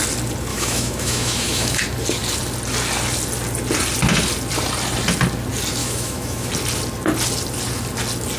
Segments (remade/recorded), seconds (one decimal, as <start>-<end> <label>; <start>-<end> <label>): 0.0-0.5 recorded; 0.5-1.8 remade; 1.8-5.8 recorded; 5.8-6.5 remade; 6.5-8.4 recorded